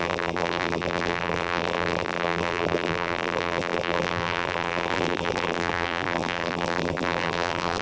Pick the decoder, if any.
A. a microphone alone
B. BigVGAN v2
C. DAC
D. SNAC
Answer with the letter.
B